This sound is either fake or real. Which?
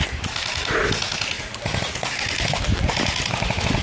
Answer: real